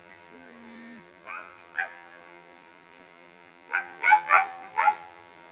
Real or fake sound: fake